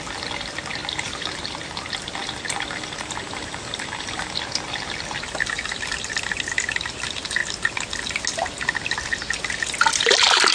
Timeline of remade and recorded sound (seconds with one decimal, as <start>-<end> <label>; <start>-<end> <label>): 0.0-10.5 recorded